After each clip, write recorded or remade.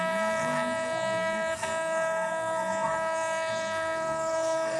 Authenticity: remade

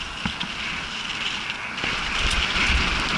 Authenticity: recorded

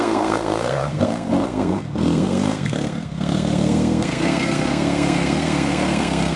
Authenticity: remade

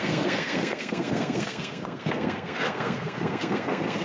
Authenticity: remade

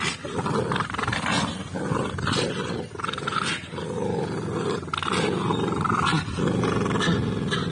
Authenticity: recorded